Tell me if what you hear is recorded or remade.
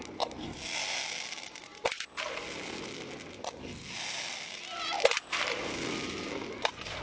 recorded